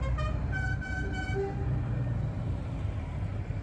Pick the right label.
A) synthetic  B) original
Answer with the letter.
A